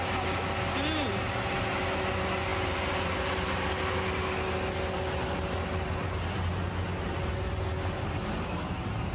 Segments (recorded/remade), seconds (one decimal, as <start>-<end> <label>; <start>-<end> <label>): 0.0-9.1 recorded

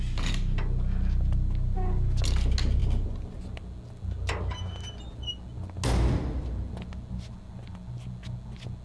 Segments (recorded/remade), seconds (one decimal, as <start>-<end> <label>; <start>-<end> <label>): 0.0-8.8 recorded

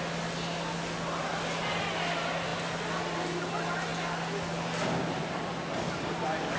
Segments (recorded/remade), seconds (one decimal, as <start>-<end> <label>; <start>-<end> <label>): 0.0-6.6 recorded

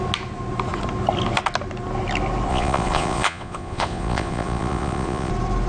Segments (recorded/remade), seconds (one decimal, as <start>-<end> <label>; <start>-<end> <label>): 0.0-2.5 recorded; 2.5-5.3 remade; 5.3-5.7 recorded